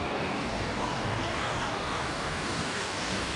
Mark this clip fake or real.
fake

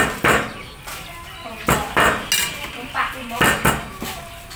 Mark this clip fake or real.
real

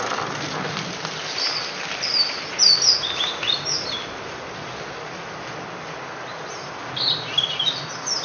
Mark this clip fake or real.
real